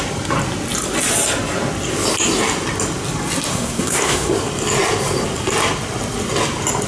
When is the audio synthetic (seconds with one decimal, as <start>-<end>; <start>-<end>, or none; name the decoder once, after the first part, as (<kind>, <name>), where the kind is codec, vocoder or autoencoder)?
3.5-4.3 (codec, SNAC)